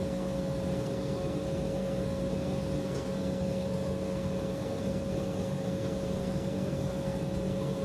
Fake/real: fake